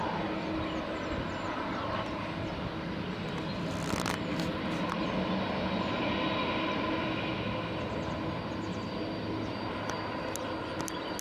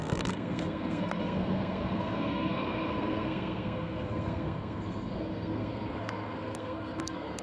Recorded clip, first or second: first